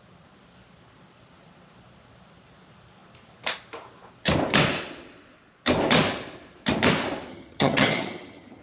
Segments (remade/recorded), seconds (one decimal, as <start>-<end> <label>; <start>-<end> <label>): 0.0-7.3 recorded; 7.3-8.6 remade